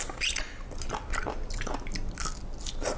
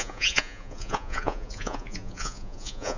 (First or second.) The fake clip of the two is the second